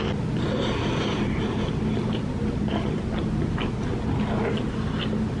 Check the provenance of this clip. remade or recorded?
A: recorded